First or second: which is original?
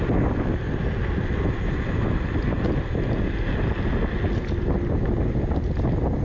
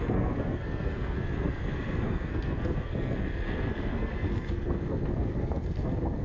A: first